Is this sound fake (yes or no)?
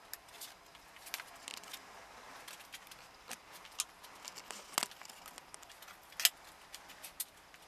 no